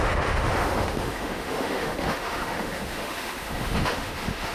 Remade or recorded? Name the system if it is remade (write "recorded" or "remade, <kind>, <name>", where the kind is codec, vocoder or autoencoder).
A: remade, autoencoder, DAC-VAE